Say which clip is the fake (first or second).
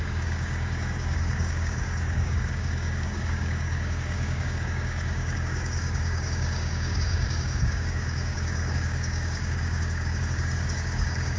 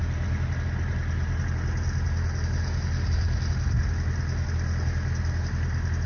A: first